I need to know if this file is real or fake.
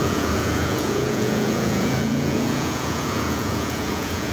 fake